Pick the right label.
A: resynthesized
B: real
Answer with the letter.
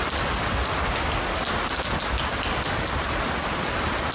B